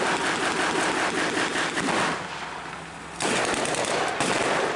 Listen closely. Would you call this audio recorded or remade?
recorded